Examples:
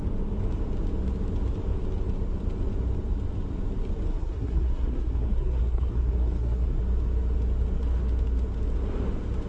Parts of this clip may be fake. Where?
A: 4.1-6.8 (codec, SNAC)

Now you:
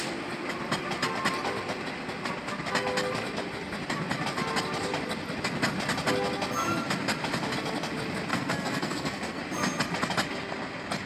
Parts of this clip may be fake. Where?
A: 8.3-9.4 (codec, SNAC)

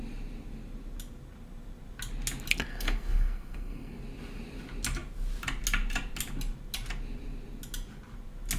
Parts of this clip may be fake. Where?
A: 2.7-4.0 (codec, SNAC)